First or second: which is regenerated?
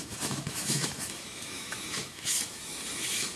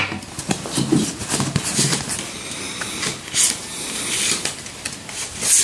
first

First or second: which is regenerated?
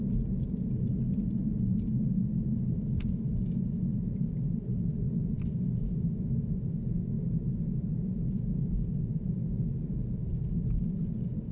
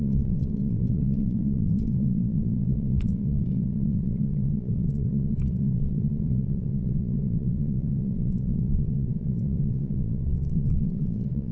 second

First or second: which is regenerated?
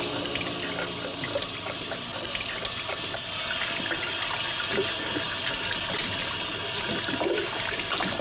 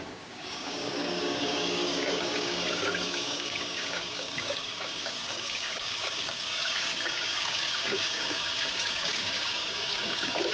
second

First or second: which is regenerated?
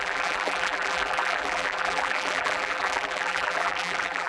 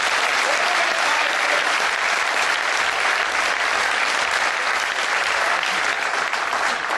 first